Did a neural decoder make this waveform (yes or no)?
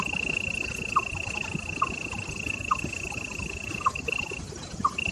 no